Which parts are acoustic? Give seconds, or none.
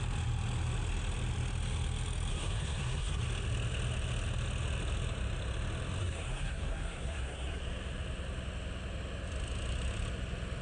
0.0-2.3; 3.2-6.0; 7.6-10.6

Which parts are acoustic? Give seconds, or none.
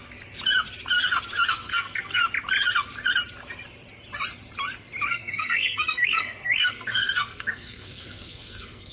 0.0-1.5; 2.2-5.1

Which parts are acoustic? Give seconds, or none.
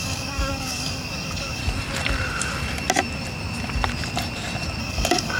1.6-4.8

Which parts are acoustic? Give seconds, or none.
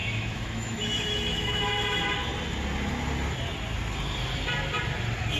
1.6-5.4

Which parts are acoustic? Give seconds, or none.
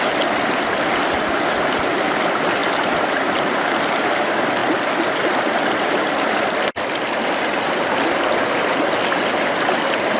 0.0-10.2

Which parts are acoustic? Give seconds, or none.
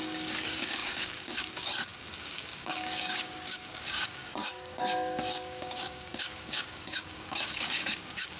none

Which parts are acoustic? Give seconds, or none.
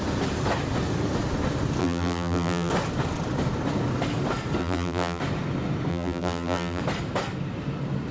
0.0-1.8; 2.7-4.6; 5.2-5.9; 6.8-8.1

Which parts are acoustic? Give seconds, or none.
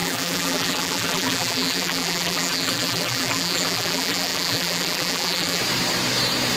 5.6-6.6